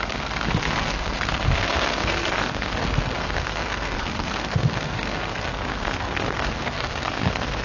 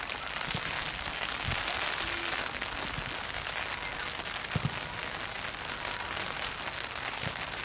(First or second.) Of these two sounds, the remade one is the first